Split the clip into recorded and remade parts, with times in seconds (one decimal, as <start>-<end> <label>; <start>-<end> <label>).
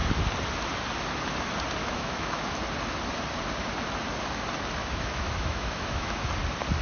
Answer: 0.0-1.8 recorded; 1.8-2.5 remade; 2.5-4.8 recorded; 4.8-6.3 remade; 6.3-6.8 recorded